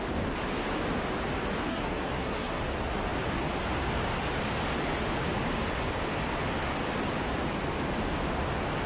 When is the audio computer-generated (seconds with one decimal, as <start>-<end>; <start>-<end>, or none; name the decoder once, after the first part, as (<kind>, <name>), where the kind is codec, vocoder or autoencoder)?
1.7-2.6 (codec, SNAC)